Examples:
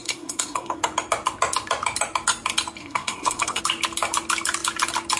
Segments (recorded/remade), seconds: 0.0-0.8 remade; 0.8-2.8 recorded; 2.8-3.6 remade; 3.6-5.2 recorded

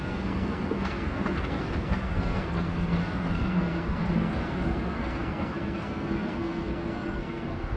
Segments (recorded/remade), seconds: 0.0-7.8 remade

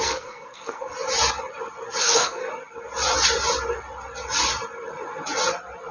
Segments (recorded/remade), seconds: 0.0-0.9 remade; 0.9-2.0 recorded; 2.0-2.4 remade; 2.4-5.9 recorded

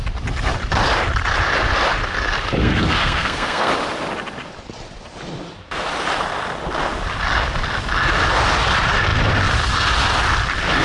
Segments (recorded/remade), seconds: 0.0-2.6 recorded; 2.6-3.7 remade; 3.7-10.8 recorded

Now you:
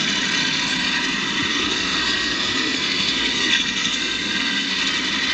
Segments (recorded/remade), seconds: 0.0-1.5 recorded; 1.5-4.7 remade; 4.7-5.3 recorded

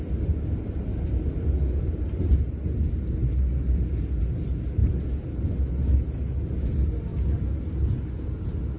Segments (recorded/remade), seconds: 0.0-8.8 recorded

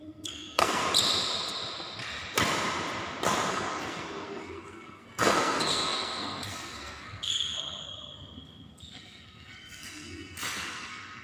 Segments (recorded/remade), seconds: 0.0-0.8 remade; 0.8-3.5 recorded; 3.5-11.2 remade